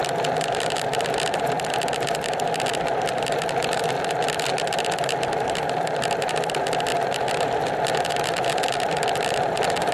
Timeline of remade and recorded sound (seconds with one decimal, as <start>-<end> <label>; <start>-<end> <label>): 0.0-9.9 recorded